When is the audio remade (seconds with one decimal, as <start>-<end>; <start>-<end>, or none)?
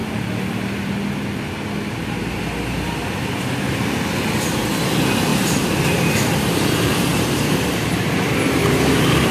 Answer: none